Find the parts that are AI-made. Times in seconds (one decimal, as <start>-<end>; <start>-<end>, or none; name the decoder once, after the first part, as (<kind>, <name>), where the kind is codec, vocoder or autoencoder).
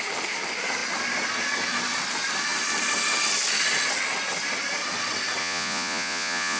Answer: 5.4-6.6 (vocoder, Vocos)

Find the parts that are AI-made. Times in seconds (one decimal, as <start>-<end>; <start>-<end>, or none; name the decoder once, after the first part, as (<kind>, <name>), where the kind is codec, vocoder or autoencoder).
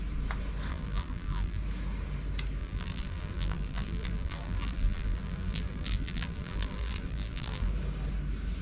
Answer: 0.7-1.6 (vocoder, BigVGAN v2); 2.6-7.7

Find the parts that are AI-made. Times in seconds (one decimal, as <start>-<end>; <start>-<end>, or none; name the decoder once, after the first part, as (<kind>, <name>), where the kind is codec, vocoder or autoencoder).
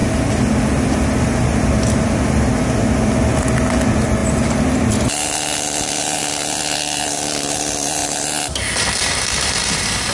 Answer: none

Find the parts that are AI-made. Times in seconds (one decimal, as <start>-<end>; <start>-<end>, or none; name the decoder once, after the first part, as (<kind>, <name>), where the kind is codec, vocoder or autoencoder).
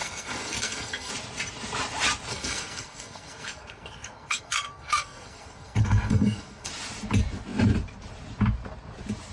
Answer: 0.0-1.1 (codec, SNAC); 2.3-6.7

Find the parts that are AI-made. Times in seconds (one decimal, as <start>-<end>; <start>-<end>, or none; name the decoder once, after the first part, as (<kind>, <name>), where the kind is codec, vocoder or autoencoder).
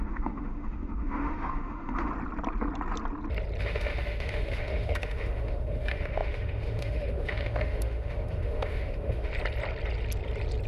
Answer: 0.0-2.1 (autoencoder, DAC-VAE); 3.6-9.3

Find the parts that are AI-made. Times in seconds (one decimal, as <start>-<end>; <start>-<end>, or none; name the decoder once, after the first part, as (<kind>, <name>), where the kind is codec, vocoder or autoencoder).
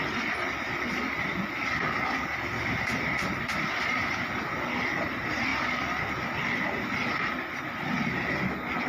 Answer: none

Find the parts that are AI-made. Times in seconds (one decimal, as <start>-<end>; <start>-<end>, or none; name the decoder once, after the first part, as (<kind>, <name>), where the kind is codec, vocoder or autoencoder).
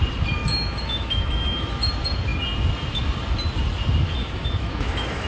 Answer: 0.4-1.9 (autoencoder, DAC-VAE); 4.2-5.3